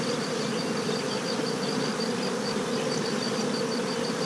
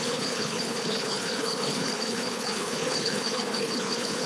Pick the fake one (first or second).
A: second